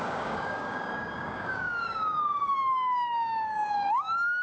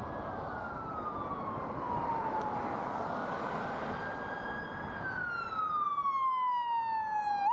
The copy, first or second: first